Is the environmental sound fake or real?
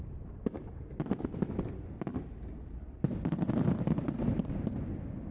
fake